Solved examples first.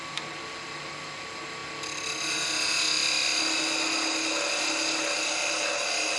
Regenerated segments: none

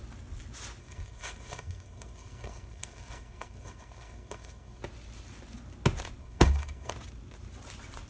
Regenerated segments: 0.8-4.8 (codec, SNAC); 6.2-6.9

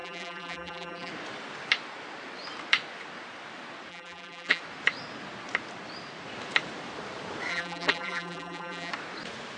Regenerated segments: 0.0-1.1 (vocoder, BigVGAN v2); 3.9-4.6; 7.5-8.9

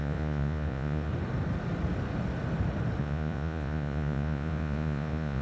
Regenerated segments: 0.0-1.1 (vocoder, Vocos); 3.0-5.4

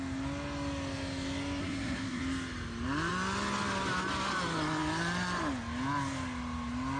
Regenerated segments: 1.6-2.2 (codec, SNAC)

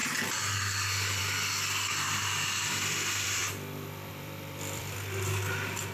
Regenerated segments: 1.2-3.4 (vocoder, BigVGAN v2); 4.1-5.9